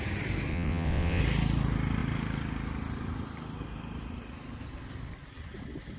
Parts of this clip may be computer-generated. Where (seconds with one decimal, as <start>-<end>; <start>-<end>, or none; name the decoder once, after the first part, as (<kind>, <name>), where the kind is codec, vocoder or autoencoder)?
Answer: 0.5-1.2 (vocoder, WaveNeXt)